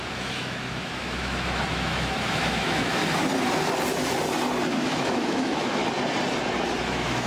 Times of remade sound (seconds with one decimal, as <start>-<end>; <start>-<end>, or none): 0.0-3.0; 4.7-5.8; 6.8-7.3